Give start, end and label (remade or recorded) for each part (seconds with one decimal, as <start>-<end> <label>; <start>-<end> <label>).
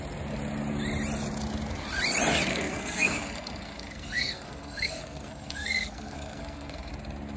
0.0-2.5 recorded; 2.5-6.9 remade; 6.9-7.4 recorded